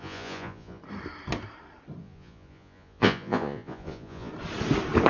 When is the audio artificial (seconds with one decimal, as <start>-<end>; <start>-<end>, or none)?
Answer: 0.0-0.8; 2.0-4.3